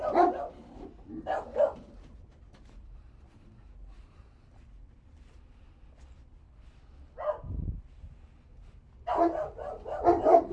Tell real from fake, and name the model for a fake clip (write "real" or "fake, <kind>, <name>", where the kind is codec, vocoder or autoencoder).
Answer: fake, vocoder, BigVGAN v2